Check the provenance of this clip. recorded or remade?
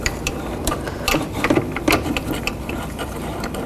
remade